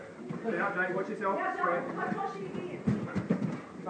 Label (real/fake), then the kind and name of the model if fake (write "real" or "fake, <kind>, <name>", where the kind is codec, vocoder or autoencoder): real